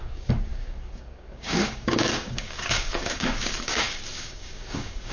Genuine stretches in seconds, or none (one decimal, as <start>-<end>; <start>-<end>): none